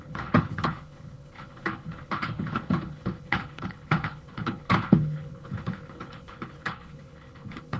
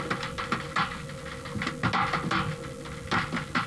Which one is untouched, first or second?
second